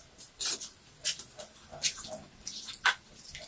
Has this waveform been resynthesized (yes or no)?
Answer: no